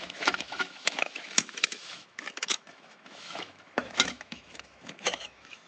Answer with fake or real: fake